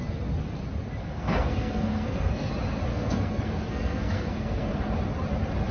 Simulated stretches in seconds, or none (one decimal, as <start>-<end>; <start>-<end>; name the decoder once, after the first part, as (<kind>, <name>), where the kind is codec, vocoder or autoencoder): 1.0-2.5 (codec, SNAC); 2.9-4.8